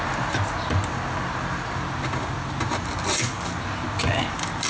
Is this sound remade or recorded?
recorded